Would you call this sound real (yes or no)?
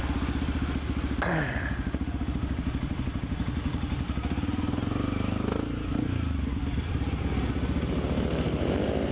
yes